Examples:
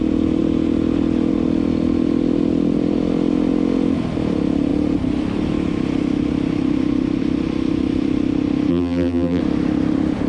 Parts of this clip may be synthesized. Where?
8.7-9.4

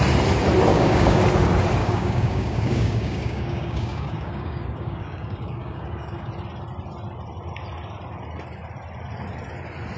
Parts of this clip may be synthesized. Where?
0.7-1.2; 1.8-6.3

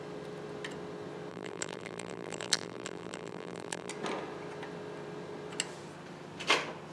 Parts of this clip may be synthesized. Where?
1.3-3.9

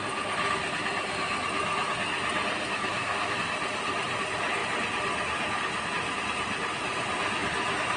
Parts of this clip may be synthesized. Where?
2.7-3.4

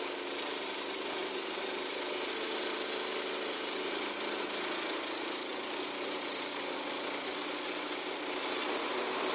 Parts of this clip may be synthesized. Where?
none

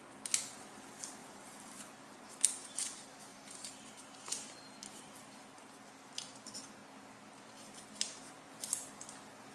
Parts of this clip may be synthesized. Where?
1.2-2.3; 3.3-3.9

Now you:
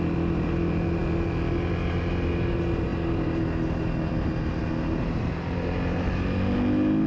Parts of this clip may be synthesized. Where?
none